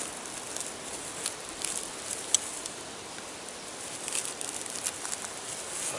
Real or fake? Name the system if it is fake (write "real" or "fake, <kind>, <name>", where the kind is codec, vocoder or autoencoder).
real